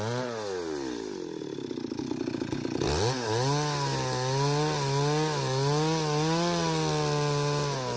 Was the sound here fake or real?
real